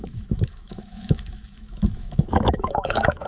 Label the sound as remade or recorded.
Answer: remade